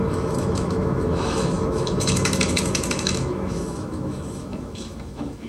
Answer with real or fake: fake